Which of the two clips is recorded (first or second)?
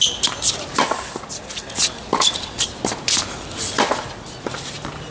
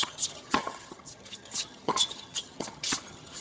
first